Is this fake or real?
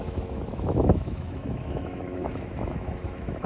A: fake